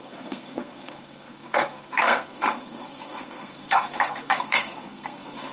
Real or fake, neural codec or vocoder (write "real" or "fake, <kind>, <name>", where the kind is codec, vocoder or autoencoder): fake, codec, SNAC